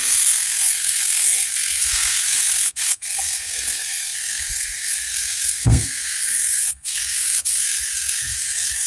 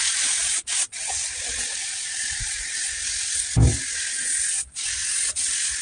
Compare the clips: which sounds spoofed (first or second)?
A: first